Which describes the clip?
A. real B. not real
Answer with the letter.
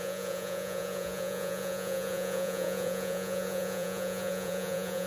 B